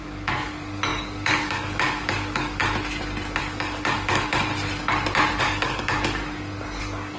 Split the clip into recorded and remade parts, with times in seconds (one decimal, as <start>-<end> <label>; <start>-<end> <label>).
0.0-2.6 remade; 2.6-3.4 recorded; 3.4-4.5 remade; 4.5-5.4 recorded; 5.4-6.2 remade; 6.2-6.8 recorded; 6.8-7.2 remade

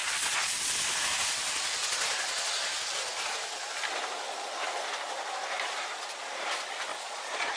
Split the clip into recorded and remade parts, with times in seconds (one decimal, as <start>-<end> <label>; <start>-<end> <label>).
0.0-0.7 remade; 0.7-6.9 recorded; 6.9-7.6 remade